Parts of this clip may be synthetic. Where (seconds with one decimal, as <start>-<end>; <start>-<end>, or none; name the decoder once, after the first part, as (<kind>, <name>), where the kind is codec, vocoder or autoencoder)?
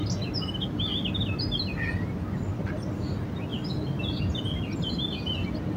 none